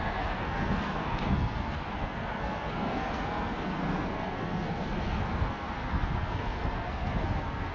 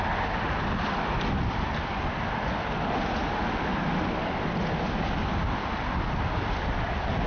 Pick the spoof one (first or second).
first